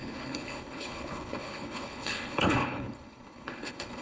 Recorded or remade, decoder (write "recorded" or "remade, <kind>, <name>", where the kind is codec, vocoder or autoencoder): remade, codec, HILCodec